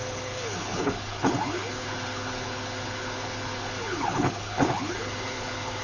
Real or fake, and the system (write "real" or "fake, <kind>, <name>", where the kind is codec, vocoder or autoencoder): fake, codec, HILCodec